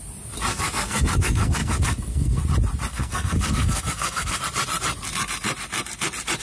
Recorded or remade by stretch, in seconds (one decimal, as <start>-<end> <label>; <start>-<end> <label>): 0.0-0.5 recorded; 0.5-2.4 remade; 2.4-2.9 recorded; 2.9-4.4 remade; 4.4-6.4 recorded